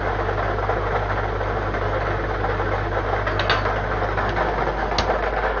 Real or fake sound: real